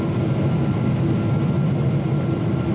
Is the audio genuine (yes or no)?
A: yes